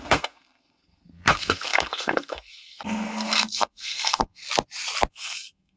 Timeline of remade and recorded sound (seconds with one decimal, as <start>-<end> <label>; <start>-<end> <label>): 0.0-4.4 remade; 4.4-5.1 recorded; 5.1-5.8 remade